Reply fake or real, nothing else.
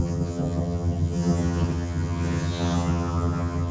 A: fake